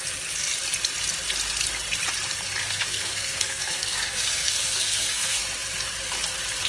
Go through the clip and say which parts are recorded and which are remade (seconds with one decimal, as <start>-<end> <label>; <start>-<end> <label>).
0.0-2.6 recorded; 2.6-5.4 remade; 5.4-6.7 recorded